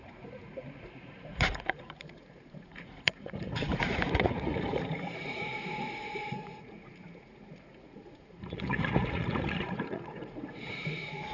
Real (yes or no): no